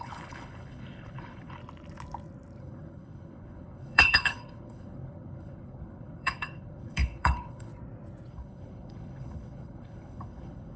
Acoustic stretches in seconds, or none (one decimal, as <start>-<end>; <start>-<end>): 1.6-2.6; 7.7-8.3